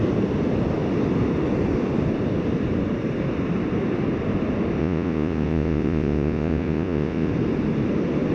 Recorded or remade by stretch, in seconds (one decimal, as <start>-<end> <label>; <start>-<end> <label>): 0.0-4.8 recorded; 4.8-7.3 remade; 7.3-8.3 recorded